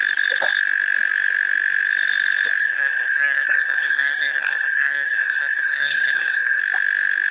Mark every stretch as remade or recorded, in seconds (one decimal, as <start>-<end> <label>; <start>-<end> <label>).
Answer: 0.0-2.6 recorded; 2.6-6.6 remade; 6.6-7.3 recorded

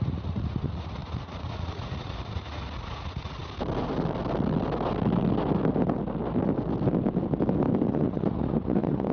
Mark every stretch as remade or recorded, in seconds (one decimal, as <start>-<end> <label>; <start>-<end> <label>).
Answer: 0.0-3.4 remade; 3.4-7.9 recorded; 7.9-9.1 remade

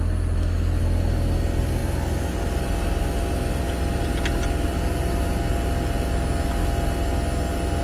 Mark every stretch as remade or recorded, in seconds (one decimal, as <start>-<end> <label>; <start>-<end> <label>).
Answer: 0.0-7.8 recorded

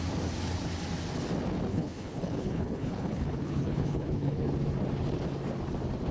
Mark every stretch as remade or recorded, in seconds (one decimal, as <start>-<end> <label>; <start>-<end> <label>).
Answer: 0.0-1.7 recorded; 1.7-4.5 remade; 4.5-6.1 recorded

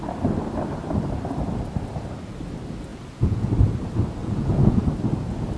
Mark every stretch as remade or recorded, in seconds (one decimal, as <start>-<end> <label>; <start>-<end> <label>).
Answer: 0.0-2.9 recorded; 2.9-3.5 remade; 3.5-4.2 recorded; 4.2-4.9 remade; 4.9-5.6 recorded